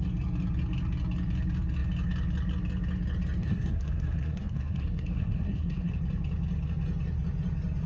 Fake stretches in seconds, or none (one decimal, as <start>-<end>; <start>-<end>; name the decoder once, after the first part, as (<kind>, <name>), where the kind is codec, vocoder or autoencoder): 3.4-5.9 (codec, SNAC)